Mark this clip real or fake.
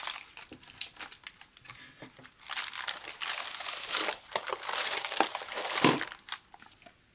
real